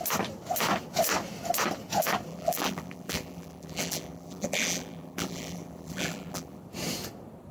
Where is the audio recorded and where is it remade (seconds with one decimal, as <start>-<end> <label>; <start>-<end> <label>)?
0.0-2.3 recorded; 2.3-6.6 remade; 6.6-7.5 recorded